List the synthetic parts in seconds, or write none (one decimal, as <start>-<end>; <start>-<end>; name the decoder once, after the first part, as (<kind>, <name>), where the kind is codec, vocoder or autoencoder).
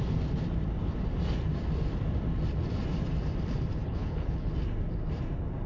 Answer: 3.8-4.5 (codec, HILCodec)